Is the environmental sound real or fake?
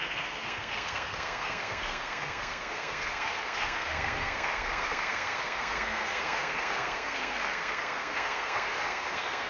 fake